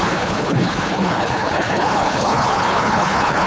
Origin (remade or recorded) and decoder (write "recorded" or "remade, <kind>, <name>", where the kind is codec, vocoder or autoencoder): remade, codec, HILCodec